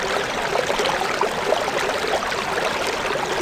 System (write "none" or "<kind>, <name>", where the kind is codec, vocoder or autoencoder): none